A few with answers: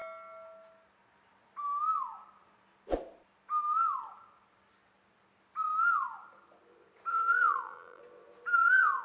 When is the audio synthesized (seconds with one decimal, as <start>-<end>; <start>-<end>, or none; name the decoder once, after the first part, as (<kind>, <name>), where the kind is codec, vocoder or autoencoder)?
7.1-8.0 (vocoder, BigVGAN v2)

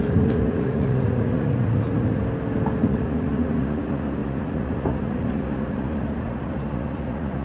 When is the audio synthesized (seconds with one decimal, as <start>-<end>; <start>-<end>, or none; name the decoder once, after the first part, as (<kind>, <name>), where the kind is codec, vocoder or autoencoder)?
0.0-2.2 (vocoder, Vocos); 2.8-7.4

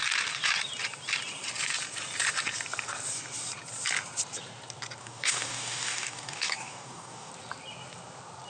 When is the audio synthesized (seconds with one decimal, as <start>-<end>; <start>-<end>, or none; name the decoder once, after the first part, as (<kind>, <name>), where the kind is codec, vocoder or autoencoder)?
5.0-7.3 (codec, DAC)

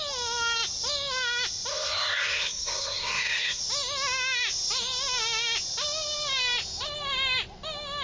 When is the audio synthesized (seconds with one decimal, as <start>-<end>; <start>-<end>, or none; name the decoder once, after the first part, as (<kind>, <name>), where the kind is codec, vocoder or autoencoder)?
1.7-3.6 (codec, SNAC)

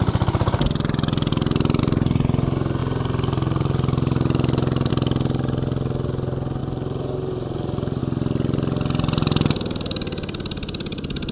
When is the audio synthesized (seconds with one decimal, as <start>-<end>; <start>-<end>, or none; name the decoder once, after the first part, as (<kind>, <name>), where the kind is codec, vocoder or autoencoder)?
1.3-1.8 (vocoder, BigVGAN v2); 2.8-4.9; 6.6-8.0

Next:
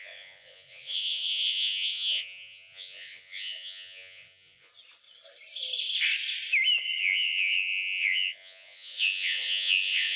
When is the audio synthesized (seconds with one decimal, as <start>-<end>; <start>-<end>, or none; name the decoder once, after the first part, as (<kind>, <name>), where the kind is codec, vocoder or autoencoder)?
0.0-4.7 (vocoder, Vocos); 7.0-10.2

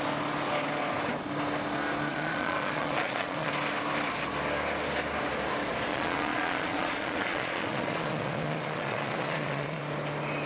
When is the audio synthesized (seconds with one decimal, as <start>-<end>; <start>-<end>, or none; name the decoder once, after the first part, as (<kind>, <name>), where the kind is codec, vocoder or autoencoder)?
2.1-3.5 (vocoder, Vocos); 5.9-9.8